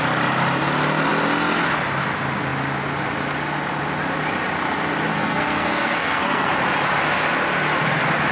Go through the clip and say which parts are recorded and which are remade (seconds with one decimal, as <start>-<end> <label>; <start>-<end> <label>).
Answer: 0.0-5.1 recorded; 5.1-6.5 remade; 6.5-8.3 recorded